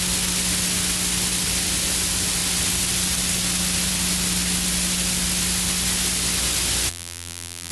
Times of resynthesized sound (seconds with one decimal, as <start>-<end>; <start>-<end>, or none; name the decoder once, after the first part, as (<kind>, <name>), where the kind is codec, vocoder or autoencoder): 6.9-7.7 (vocoder, BigVGAN v2)